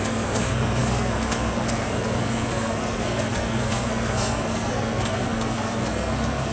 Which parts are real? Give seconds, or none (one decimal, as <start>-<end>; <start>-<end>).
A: none